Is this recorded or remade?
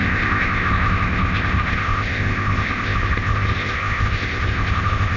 remade